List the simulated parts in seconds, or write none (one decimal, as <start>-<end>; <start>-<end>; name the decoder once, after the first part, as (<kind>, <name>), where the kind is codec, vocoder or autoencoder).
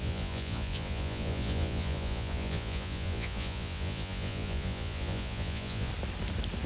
0.0-5.9 (vocoder, Vocos)